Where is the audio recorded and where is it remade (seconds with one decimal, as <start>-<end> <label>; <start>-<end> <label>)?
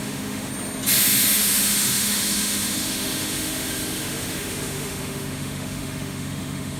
0.0-0.5 remade; 0.5-1.0 recorded; 1.0-6.8 remade